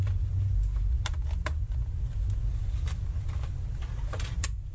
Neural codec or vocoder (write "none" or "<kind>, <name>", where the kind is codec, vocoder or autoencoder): none